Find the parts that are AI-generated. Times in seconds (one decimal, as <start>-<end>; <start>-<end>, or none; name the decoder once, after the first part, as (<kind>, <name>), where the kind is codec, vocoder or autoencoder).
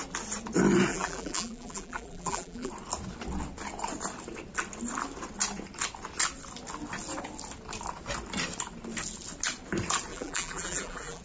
0.9-2.7 (vocoder, BigVGAN v2); 10.1-11.2